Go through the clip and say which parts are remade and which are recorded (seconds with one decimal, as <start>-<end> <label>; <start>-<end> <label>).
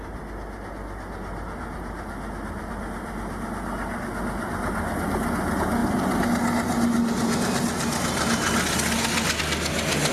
0.0-10.1 recorded